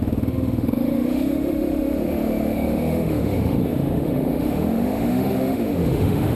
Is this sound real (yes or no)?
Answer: no